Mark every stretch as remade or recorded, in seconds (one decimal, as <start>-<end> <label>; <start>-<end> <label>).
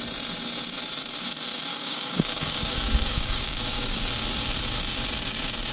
0.0-1.7 recorded; 1.7-4.1 remade; 4.1-5.7 recorded